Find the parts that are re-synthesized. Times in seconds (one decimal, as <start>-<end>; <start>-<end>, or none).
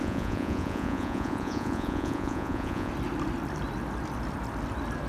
0.0-2.9